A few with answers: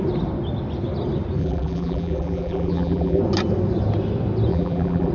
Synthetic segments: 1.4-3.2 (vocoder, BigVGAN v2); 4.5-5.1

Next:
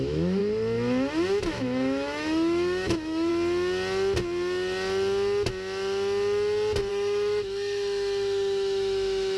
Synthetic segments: 0.0-0.4 (autoencoder, DAC-VAE); 1.4-3.3; 6.9-9.4